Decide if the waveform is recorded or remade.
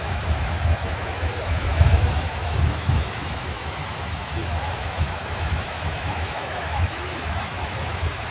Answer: remade